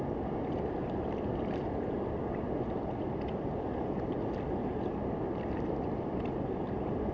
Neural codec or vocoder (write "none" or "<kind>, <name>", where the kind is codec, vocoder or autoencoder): none